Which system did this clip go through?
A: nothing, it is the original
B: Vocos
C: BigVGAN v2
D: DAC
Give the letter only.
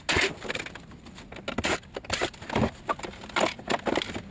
A